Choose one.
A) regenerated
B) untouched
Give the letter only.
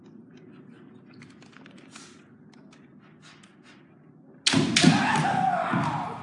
B